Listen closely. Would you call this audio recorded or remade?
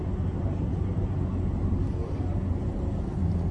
recorded